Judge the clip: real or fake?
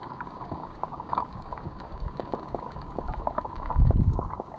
fake